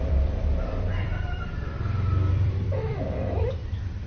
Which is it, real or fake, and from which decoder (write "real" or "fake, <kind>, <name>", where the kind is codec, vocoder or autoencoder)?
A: fake, vocoder, BigVGAN v2